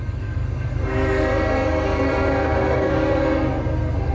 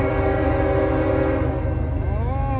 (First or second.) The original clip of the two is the second